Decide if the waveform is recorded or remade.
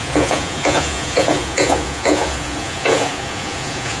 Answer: remade